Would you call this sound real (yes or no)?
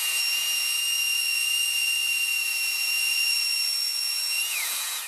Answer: no